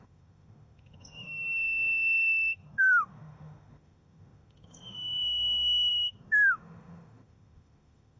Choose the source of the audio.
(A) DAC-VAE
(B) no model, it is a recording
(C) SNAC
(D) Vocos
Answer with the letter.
A